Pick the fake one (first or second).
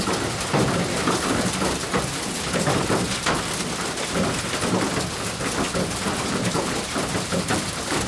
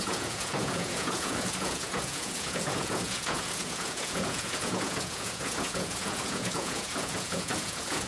second